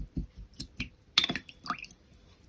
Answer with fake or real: real